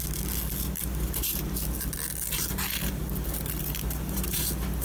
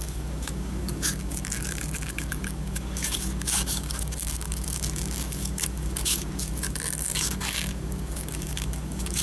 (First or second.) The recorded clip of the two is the first